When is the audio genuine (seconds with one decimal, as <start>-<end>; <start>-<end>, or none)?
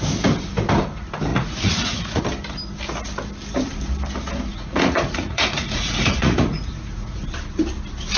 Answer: 0.0-1.3; 2.2-4.5; 7.2-8.2